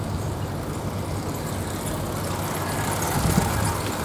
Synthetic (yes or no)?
no